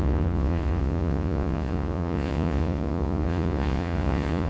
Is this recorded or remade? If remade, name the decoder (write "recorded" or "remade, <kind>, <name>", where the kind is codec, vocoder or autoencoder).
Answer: remade, vocoder, Vocos